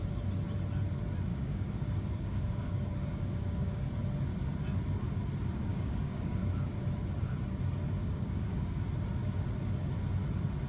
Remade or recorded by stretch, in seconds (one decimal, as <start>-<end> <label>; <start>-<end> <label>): 0.0-1.3 recorded; 1.3-3.8 remade; 3.8-5.7 recorded; 5.7-6.5 remade; 6.5-8.0 recorded; 8.0-8.8 remade; 8.8-10.7 recorded